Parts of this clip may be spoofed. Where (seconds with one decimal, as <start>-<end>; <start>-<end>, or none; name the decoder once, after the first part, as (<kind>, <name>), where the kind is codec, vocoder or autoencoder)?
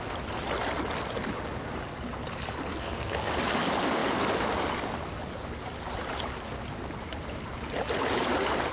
2.7-3.3 (codec, SNAC)